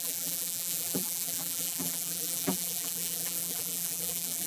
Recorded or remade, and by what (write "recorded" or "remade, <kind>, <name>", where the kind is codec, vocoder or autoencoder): remade, vocoder, BigVGAN v2